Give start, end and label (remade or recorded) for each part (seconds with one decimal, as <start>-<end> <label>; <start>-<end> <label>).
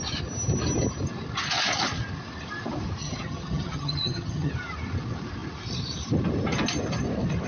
0.0-3.0 recorded; 3.0-4.5 remade; 4.5-7.5 recorded